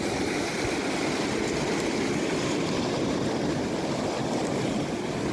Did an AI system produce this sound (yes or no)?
no